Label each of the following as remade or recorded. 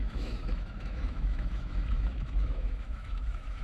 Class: remade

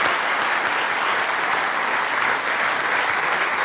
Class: recorded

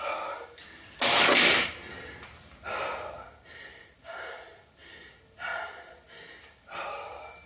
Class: recorded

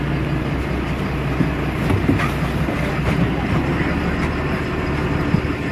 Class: recorded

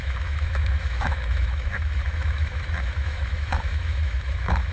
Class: remade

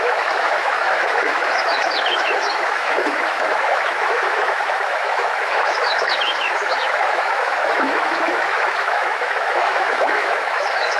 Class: remade